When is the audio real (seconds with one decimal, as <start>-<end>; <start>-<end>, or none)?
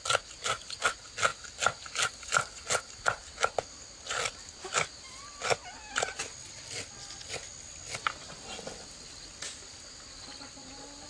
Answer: 0.0-11.1